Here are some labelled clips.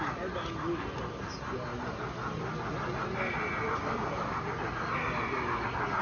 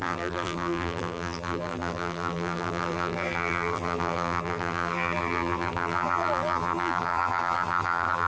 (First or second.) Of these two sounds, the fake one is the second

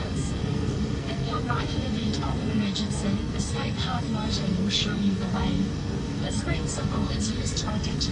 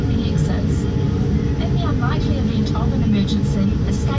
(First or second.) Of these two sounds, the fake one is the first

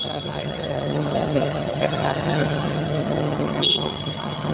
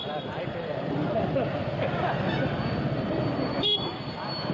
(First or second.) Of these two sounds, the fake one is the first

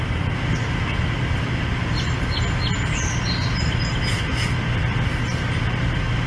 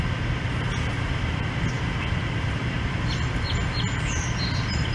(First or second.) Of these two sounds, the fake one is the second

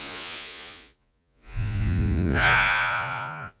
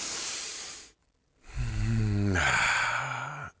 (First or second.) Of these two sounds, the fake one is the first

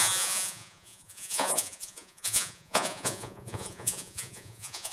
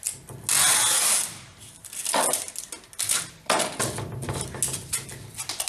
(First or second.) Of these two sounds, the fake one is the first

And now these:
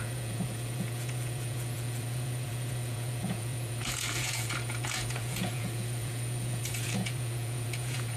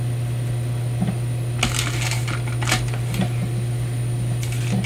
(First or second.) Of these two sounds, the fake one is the first